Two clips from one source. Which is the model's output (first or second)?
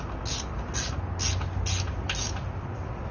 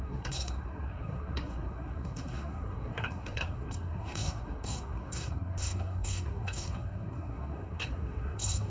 second